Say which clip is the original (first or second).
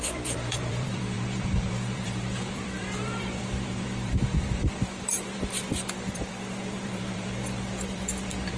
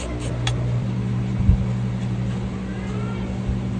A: second